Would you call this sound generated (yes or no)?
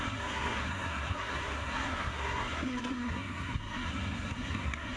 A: yes